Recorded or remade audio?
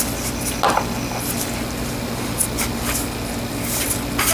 recorded